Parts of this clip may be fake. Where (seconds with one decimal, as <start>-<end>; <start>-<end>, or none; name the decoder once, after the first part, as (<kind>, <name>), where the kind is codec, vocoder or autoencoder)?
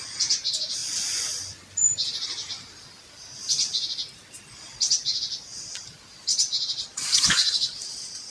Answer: 6.3-7.8 (vocoder, Vocos)